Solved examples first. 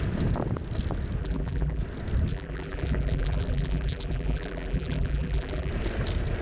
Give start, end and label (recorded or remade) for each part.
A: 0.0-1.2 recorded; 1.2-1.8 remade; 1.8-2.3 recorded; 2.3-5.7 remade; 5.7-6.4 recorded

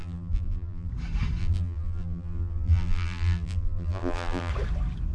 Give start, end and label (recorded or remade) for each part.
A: 0.0-0.9 remade; 0.9-1.4 recorded; 1.4-4.5 remade; 4.5-5.1 recorded

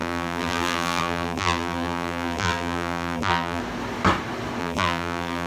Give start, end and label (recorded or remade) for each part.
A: 0.0-3.6 remade; 3.6-4.6 recorded; 4.6-5.5 remade

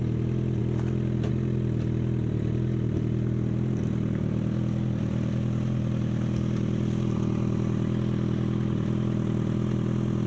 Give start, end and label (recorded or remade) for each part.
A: 0.0-10.3 recorded

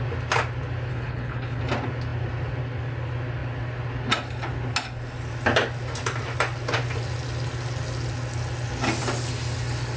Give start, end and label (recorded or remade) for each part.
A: 0.0-0.9 recorded; 0.9-1.6 remade; 1.6-10.0 recorded

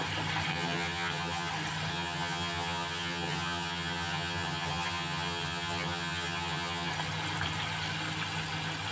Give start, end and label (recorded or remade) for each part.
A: 0.0-0.5 recorded; 0.5-1.5 remade; 1.5-1.9 recorded; 1.9-6.9 remade; 6.9-8.9 recorded

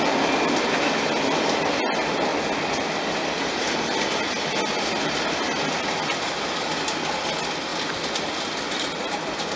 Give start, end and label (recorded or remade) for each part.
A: 0.0-9.6 recorded